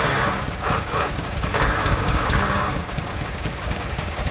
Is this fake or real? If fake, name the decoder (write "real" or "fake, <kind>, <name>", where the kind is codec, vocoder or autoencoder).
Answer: fake, codec, DAC